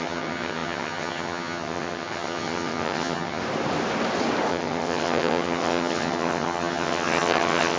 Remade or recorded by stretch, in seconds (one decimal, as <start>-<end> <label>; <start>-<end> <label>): 0.0-3.4 remade; 3.4-4.5 recorded; 4.5-7.8 remade